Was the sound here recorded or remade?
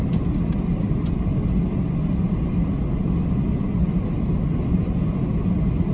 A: recorded